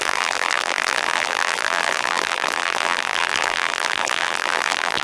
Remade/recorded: remade